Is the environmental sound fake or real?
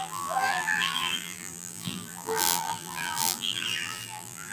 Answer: fake